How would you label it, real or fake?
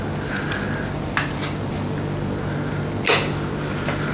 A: real